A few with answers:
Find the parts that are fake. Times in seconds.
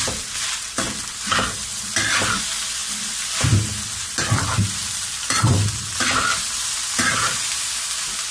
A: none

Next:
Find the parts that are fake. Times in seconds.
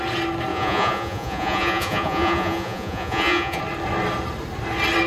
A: 0.5-3.6 (vocoder, Vocos)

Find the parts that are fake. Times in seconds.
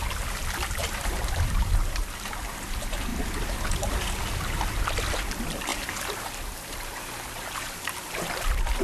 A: 0.8-1.8 (vocoder, BigVGAN v2); 3.1-3.9; 5.7-6.8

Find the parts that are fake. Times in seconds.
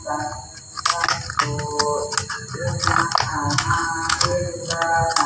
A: 3.3-4.4 (autoencoder, DAC-VAE)